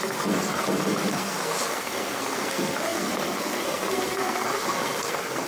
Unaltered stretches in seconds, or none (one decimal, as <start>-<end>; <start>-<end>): none